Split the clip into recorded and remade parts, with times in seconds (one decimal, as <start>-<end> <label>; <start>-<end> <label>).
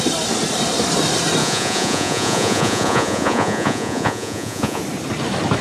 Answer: 0.0-1.4 recorded; 1.4-4.8 remade; 4.8-5.6 recorded